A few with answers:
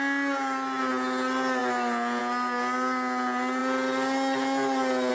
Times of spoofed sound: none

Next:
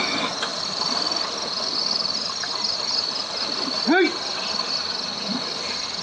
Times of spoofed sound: 0.5-1.8 (vocoder, BigVGAN v2)

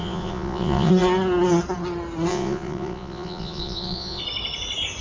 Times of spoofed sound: 0.0-0.9 (vocoder, Vocos); 2.3-4.2

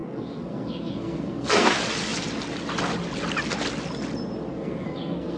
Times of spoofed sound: 0.0-1.7 (codec, SNAC); 4.5-5.4